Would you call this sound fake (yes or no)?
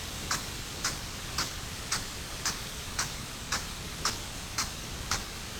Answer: yes